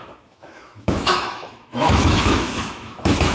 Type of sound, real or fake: fake